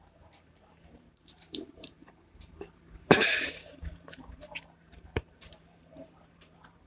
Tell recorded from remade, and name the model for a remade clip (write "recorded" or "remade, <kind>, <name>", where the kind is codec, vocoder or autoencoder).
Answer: remade, vocoder, BigVGAN v2